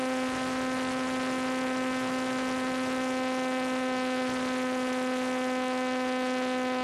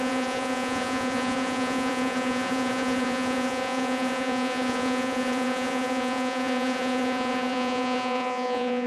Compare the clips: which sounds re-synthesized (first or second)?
second